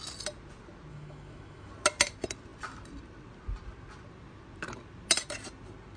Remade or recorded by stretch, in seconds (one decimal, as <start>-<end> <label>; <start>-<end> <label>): 0.0-0.9 recorded; 0.9-1.7 remade; 1.7-6.0 recorded